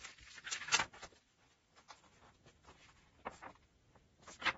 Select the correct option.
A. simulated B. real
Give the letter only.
B